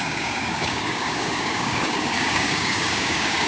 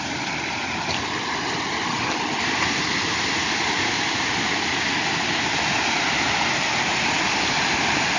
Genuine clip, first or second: second